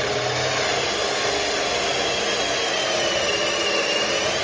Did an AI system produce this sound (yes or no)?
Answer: no